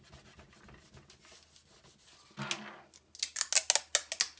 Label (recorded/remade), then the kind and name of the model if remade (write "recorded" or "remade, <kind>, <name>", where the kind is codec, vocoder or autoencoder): recorded